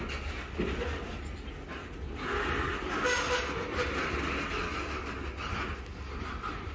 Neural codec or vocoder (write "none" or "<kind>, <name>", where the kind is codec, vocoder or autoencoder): none